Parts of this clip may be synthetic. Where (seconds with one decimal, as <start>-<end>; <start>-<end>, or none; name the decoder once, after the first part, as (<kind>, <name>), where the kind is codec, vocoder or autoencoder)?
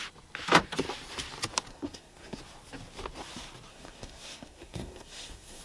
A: 1.7-2.4 (codec, SNAC); 3.7-5.6